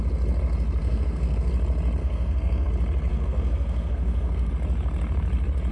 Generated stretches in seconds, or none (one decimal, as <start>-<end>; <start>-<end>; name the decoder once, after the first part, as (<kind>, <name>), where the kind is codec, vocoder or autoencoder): 0.8-1.5 (codec, SNAC); 2.0-2.7; 3.1-4.5